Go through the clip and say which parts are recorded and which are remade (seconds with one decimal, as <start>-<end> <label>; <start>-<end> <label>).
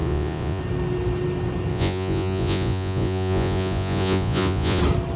0.0-0.6 remade; 0.6-1.7 recorded; 1.7-4.8 remade; 4.8-5.2 recorded